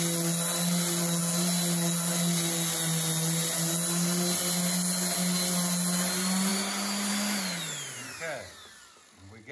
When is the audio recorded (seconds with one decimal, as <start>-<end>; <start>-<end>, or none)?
0.0-9.5